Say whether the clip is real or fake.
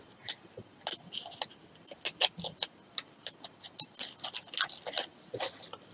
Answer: real